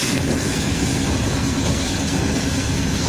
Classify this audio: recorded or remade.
remade